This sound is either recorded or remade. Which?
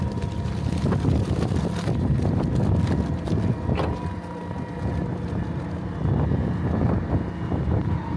recorded